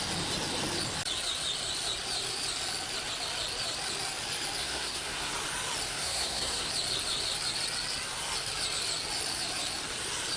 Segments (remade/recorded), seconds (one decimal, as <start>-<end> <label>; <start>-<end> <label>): 0.0-4.6 recorded; 4.6-5.3 remade; 5.3-5.9 recorded; 5.9-6.7 remade; 6.7-10.4 recorded